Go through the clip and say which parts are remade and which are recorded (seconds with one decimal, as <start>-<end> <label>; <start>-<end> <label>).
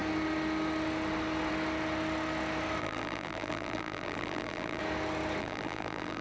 0.0-2.8 recorded; 2.8-4.8 remade; 4.8-5.4 recorded; 5.4-6.2 remade